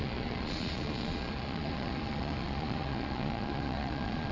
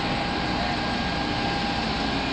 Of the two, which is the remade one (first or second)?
first